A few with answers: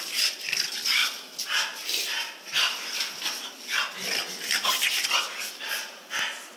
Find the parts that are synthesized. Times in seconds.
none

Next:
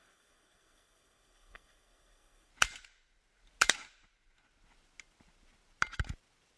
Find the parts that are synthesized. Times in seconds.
0.0-2.5 (codec, SNAC)